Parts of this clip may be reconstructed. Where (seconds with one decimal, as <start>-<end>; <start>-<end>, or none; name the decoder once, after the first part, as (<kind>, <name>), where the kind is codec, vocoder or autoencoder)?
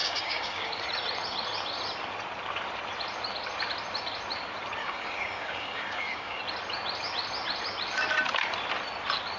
0.0-0.8 (codec, DAC); 4.8-6.4